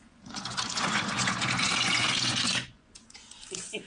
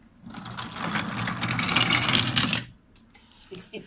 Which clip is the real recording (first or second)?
second